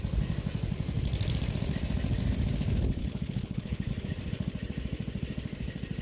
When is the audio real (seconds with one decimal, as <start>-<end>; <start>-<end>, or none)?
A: 0.0-3.0; 3.9-6.0